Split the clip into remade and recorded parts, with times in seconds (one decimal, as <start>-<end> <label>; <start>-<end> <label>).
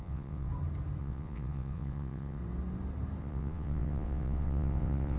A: 0.0-0.5 remade; 0.5-1.0 recorded; 1.0-2.4 remade; 2.4-3.2 recorded; 3.2-5.2 remade